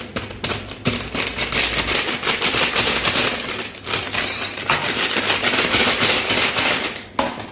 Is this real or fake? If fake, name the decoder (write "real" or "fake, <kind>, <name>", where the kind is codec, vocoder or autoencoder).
real